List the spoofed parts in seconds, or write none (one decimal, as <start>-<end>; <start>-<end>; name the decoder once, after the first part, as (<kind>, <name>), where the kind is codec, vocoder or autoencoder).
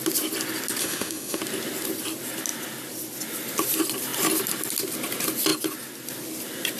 0.8-1.4 (autoencoder, DAC-VAE)